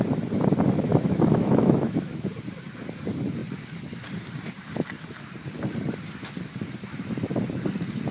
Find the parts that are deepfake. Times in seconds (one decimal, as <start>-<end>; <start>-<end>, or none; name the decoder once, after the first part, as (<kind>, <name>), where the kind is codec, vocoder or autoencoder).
0.9-2.3 (autoencoder, DAC-VAE)

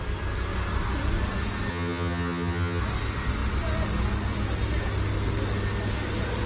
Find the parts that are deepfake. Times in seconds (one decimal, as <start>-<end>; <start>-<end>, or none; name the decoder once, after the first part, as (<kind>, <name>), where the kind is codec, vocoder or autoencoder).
1.7-2.8 (vocoder, HiFi-GAN)

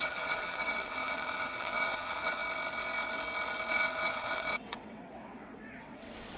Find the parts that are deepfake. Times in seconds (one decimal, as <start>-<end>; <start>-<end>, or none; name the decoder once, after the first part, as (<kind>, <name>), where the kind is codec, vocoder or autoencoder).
0.0-2.4 (vocoder, WaveNeXt); 3.7-6.4